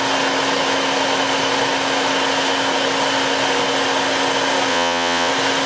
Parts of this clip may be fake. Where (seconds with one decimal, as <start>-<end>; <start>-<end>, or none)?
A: 4.7-5.3